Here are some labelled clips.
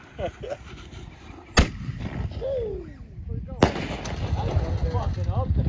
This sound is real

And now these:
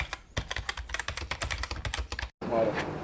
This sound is real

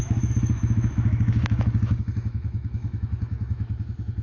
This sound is fake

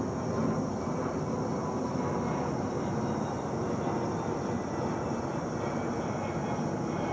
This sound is real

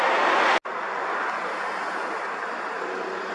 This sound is real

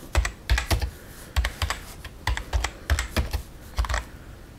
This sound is real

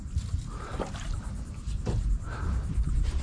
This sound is real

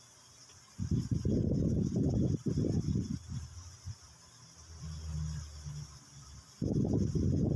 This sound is real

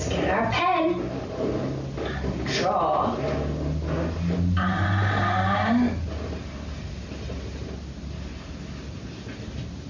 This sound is real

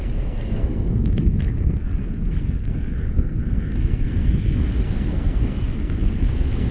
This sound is fake